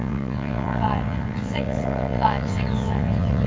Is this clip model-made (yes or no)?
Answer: yes